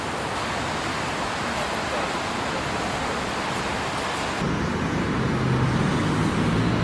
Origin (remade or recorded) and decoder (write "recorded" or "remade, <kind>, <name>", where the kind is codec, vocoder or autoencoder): recorded